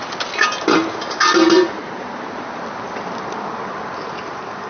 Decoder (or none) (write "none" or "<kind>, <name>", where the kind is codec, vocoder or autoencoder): none